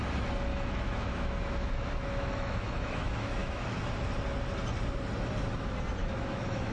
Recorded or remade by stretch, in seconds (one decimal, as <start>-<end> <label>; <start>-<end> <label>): 0.0-0.5 recorded; 0.5-3.8 remade; 3.8-6.0 recorded; 6.0-6.7 remade